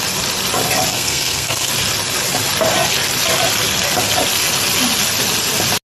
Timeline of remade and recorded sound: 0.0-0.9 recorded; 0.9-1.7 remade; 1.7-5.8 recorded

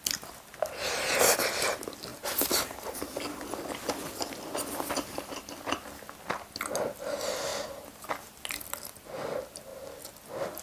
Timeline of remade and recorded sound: 0.0-10.6 recorded

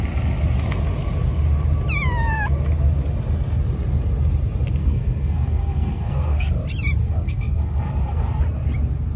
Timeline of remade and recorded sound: 0.0-4.8 recorded; 4.8-6.5 remade; 6.5-7.0 recorded; 7.0-8.4 remade; 8.4-9.2 recorded

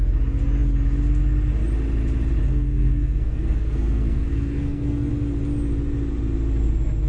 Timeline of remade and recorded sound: 0.0-2.4 recorded; 2.4-5.1 remade; 5.1-7.1 recorded